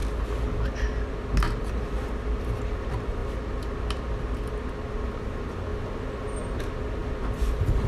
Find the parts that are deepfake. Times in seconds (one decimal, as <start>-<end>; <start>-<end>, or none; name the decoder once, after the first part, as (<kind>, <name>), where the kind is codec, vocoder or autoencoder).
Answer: none